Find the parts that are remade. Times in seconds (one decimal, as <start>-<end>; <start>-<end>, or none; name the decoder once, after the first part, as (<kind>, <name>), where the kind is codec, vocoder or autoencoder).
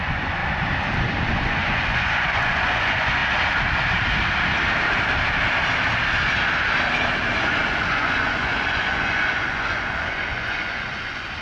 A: 0.0-0.4 (vocoder, Vocos); 1.3-3.2; 7.4-11.4